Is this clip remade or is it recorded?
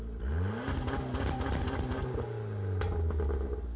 recorded